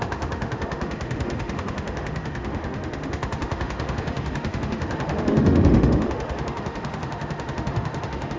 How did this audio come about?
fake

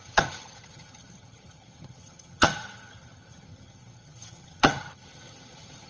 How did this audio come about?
fake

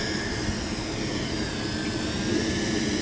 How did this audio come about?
real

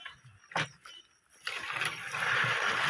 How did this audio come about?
real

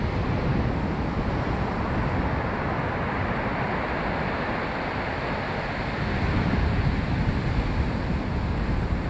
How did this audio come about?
real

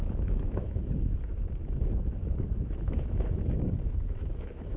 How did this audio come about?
fake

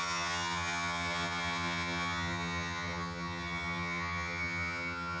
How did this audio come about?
fake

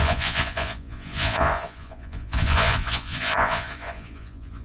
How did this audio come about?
fake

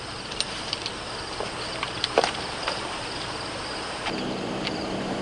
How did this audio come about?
fake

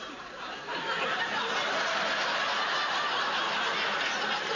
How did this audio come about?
real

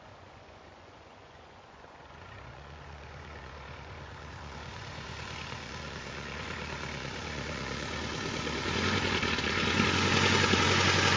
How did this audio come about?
fake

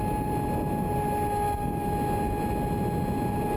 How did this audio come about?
real